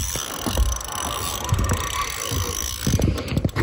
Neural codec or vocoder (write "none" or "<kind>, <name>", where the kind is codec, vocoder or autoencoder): none